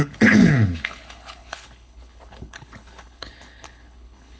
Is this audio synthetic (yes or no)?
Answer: yes